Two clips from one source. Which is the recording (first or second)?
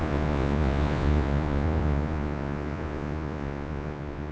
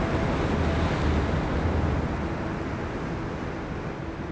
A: second